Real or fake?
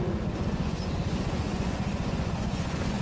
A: fake